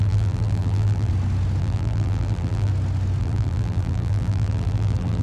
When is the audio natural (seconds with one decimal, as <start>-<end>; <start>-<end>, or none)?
1.1-1.6; 2.7-3.2